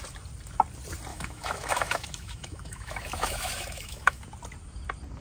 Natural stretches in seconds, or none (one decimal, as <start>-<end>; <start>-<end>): 0.0-1.1; 4.2-5.2